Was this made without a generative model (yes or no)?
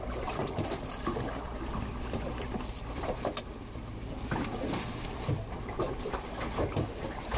no